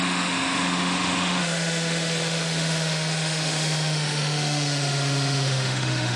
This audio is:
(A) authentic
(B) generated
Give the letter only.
B